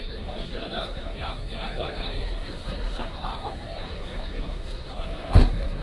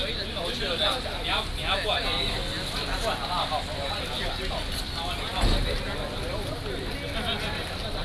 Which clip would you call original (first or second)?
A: second